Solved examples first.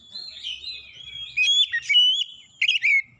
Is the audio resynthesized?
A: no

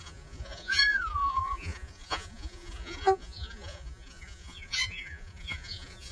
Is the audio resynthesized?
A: yes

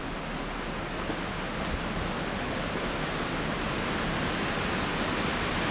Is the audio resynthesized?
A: no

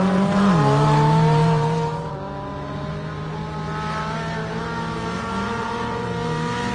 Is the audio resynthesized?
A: no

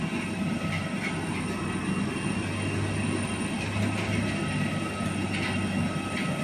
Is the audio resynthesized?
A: no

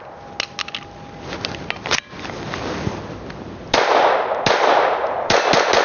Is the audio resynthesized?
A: no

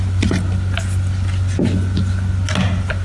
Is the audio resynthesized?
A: no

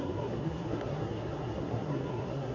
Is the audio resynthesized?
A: yes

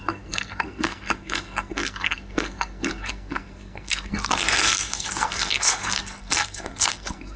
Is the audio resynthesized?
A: yes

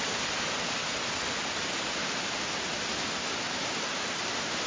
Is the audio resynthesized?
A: no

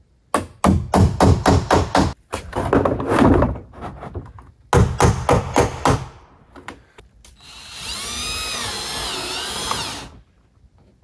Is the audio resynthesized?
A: no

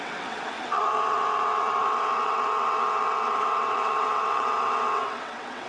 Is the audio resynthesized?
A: yes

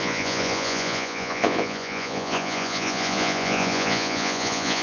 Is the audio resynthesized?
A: yes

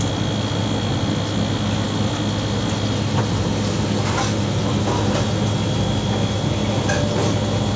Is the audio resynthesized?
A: no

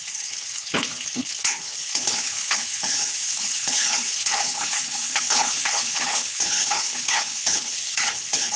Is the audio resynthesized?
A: yes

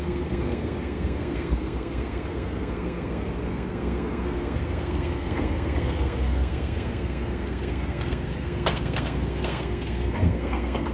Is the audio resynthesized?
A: yes